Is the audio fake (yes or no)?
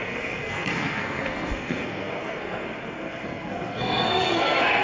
yes